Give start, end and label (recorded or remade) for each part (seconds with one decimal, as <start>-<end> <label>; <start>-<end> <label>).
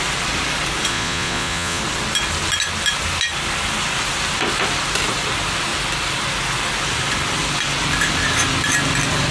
0.0-0.9 recorded; 0.9-1.8 remade; 1.8-9.3 recorded